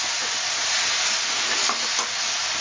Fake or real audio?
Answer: real